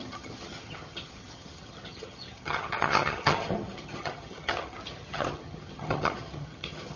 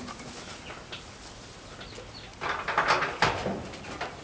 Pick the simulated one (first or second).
first